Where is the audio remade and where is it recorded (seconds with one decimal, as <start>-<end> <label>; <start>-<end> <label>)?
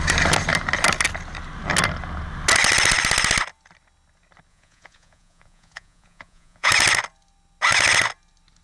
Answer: 0.0-4.5 recorded; 4.5-6.7 remade; 6.7-8.6 recorded